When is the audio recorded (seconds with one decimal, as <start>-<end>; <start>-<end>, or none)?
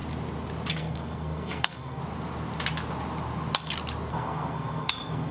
0.0-0.7; 2.0-4.1